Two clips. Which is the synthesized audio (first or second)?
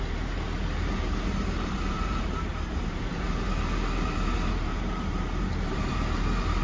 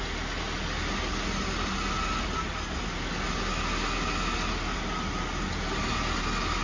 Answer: first